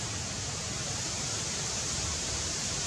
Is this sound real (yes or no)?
no